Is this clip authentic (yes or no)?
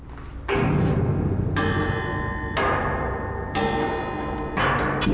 yes